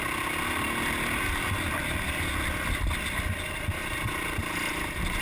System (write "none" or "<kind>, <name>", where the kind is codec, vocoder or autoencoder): none